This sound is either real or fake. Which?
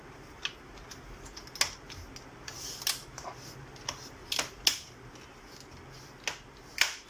real